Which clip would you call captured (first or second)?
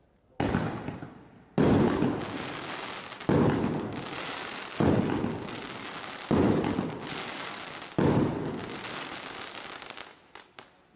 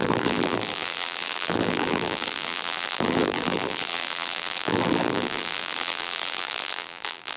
first